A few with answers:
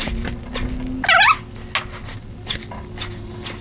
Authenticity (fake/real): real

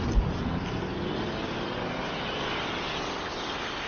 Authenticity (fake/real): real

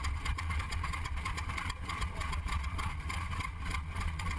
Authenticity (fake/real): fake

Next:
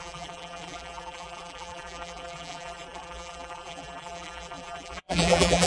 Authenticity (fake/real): fake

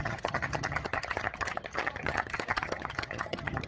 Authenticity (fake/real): fake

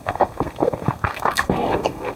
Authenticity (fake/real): fake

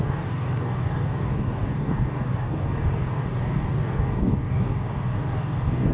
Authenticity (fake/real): fake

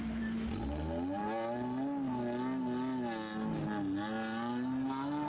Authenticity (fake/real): real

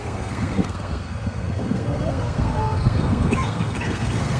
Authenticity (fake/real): fake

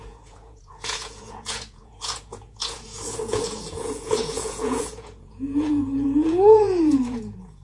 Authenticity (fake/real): fake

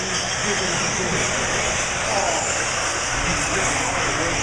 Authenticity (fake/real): real